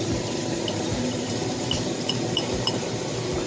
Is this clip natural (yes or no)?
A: no